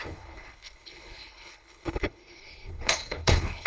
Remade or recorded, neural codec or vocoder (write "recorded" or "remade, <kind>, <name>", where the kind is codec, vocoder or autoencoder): remade, codec, HILCodec